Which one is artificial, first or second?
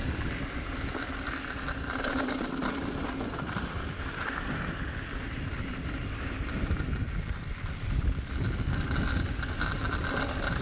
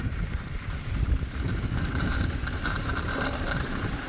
second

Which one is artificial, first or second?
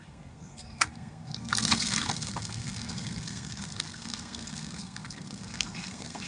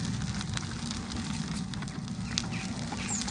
first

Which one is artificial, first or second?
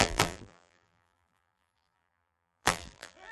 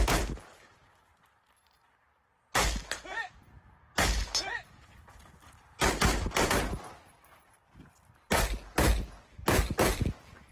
first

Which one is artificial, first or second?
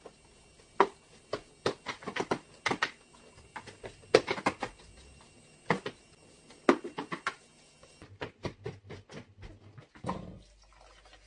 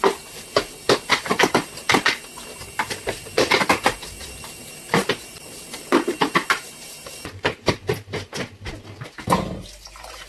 second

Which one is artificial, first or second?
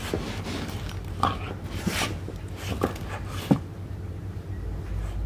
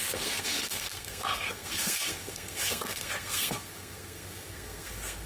second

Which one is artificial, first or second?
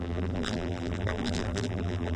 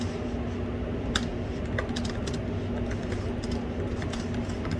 first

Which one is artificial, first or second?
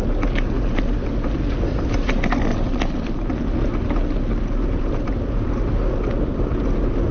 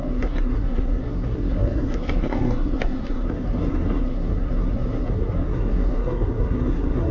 second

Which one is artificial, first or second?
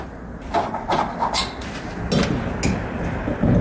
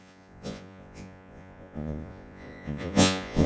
second